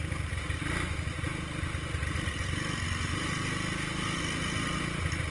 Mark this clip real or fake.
real